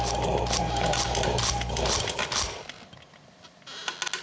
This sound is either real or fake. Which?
real